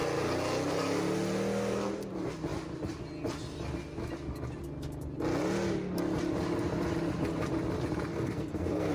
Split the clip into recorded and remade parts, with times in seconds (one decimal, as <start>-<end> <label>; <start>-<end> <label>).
0.0-8.1 recorded; 8.1-8.9 remade